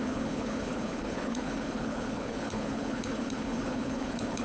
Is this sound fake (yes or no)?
yes